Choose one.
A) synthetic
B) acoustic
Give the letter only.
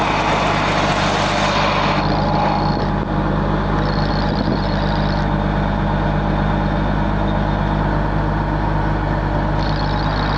B